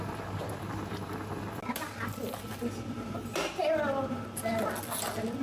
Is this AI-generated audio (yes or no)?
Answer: no